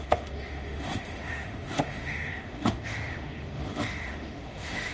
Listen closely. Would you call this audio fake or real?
fake